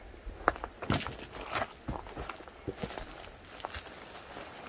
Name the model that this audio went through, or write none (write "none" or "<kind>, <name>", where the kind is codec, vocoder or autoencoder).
none